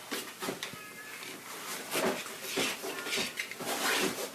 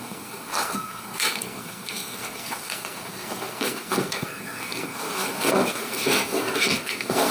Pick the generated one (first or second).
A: second